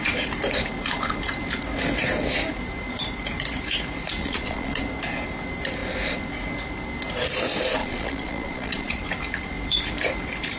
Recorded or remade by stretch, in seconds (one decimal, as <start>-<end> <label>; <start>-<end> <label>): 0.0-4.2 recorded; 4.2-4.8 remade; 4.8-7.8 recorded; 7.8-9.0 remade; 9.0-10.6 recorded